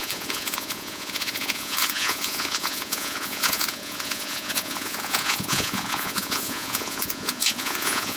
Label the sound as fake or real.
fake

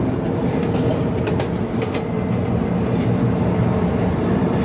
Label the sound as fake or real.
real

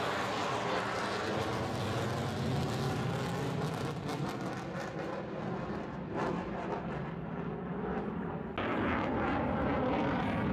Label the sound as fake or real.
real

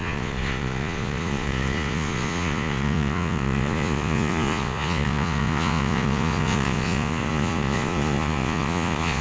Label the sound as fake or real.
fake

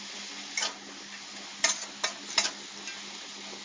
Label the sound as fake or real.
real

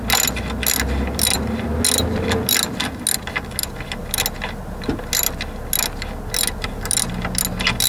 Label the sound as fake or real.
real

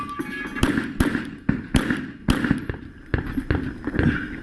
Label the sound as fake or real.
real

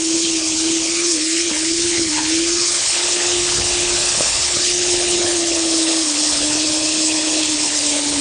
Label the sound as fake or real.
fake